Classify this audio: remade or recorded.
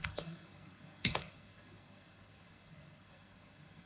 remade